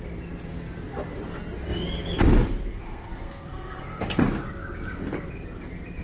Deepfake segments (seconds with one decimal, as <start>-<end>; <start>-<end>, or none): 2.7-4.2